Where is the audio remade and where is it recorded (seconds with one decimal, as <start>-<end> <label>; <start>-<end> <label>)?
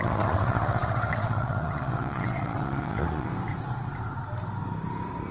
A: 0.0-3.3 remade; 3.3-5.3 recorded